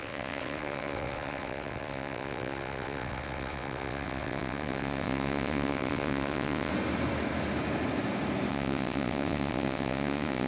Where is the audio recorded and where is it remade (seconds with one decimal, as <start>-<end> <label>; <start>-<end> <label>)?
0.0-6.7 remade; 6.7-8.5 recorded; 8.5-10.5 remade